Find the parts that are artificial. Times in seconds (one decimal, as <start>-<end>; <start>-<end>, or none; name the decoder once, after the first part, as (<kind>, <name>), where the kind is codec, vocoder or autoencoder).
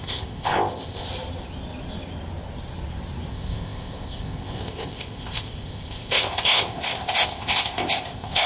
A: 0.0-1.1 (codec, ZipCodec); 3.3-8.5